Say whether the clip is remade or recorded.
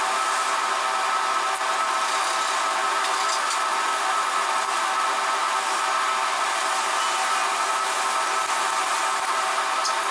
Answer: recorded